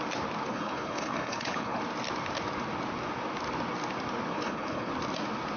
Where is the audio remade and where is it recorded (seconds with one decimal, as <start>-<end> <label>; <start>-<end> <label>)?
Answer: 0.0-0.5 recorded; 0.5-1.8 remade; 1.8-4.3 recorded; 4.3-4.9 remade; 4.9-5.6 recorded